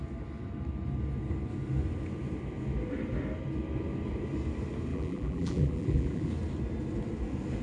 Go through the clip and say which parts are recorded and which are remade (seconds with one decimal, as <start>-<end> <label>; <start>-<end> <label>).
0.0-4.9 recorded; 4.9-6.3 remade; 6.3-7.6 recorded